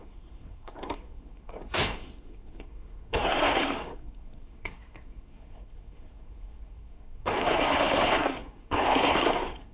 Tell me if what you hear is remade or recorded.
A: remade